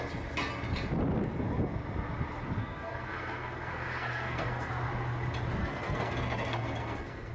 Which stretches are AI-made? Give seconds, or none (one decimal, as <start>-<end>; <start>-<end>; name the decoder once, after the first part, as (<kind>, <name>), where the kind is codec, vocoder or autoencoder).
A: 2.6-4.7 (codec, SNAC); 5.6-7.3